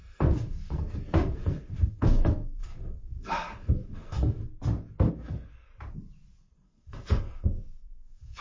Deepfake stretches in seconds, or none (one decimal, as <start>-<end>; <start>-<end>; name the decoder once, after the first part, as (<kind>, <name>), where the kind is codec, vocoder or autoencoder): 0.0-4.4 (codec, SNAC); 5.1-5.7; 6.4-8.4